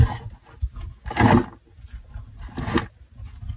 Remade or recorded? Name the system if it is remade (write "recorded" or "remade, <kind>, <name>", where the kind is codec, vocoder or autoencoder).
recorded